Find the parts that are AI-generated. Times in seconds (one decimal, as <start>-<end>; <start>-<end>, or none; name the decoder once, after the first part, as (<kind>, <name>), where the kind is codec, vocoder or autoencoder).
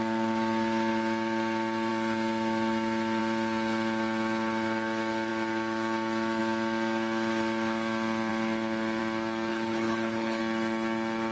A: 9.5-10.4 (codec, HILCodec)